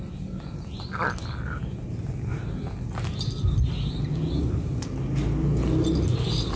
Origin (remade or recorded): recorded